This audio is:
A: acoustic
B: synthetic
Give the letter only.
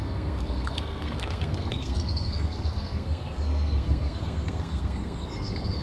B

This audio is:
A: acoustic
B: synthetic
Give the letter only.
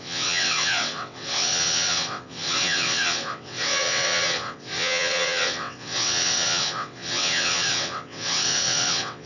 B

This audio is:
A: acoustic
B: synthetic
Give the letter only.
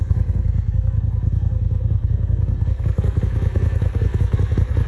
B